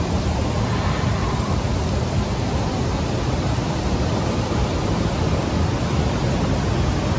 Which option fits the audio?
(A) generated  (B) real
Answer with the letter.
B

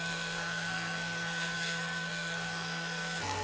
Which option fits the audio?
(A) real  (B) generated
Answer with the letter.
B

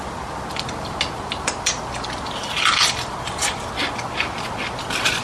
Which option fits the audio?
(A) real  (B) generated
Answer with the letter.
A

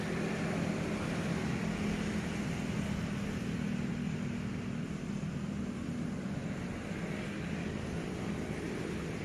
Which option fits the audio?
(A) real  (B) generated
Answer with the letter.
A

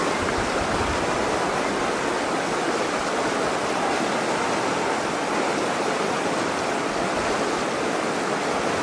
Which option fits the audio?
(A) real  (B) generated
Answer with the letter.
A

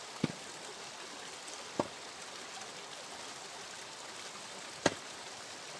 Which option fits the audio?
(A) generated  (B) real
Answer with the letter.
B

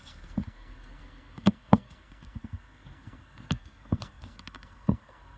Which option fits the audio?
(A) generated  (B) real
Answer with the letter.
A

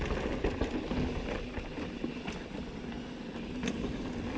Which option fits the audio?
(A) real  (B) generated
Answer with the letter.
A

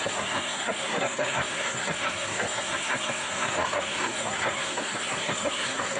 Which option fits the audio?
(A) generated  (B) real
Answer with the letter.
A